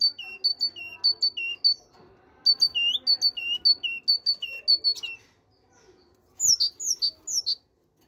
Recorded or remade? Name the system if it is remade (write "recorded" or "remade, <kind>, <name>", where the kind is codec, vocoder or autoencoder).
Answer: recorded